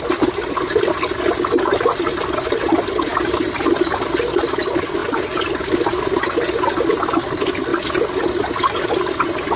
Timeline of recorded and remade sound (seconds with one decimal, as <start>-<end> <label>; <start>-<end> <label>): 0.0-9.6 recorded